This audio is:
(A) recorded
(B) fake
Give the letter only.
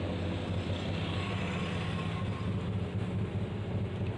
A